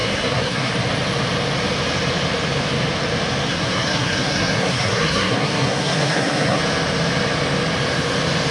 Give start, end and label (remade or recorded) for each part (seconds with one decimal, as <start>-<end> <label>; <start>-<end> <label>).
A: 0.0-0.7 remade; 0.7-3.5 recorded; 3.5-6.6 remade; 6.6-8.5 recorded